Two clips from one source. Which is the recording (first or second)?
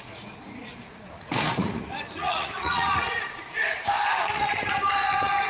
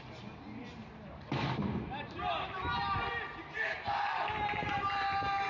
second